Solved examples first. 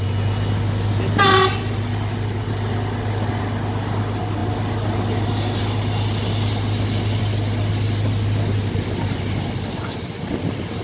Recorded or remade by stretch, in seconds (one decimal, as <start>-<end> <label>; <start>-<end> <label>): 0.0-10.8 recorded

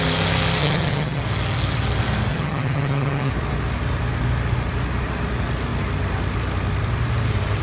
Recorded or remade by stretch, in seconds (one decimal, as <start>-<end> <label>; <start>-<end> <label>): 0.0-0.6 recorded; 0.6-1.2 remade; 1.2-2.3 recorded; 2.3-3.3 remade; 3.3-7.6 recorded

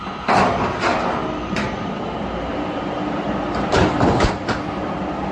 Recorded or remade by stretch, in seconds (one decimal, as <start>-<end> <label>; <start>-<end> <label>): 0.0-1.2 recorded; 1.2-2.0 remade; 2.0-2.5 recorded; 2.5-3.7 remade; 3.7-5.3 recorded